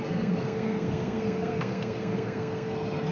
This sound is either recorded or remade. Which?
remade